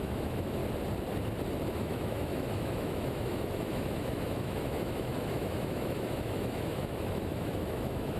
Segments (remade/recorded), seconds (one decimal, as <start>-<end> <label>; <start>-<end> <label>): 0.0-0.6 remade; 0.6-1.7 recorded; 1.7-8.2 remade